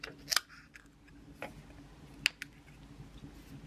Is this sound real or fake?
real